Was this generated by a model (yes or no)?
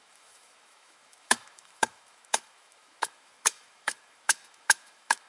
yes